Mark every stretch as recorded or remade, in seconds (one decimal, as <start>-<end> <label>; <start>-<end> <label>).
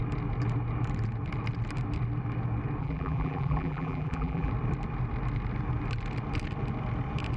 0.0-2.8 recorded; 2.8-4.5 remade; 4.5-7.4 recorded